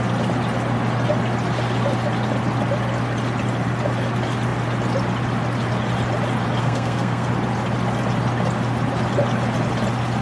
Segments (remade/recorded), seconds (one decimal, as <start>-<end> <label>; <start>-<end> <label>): 0.0-6.6 recorded; 6.6-7.3 remade; 7.3-10.2 recorded